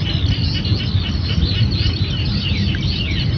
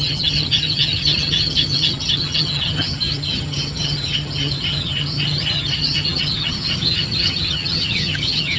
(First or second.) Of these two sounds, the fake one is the second